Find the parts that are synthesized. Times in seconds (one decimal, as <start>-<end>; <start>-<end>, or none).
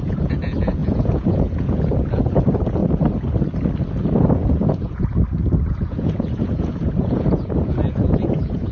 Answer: 0.0-2.8; 3.9-5.1; 5.7-8.7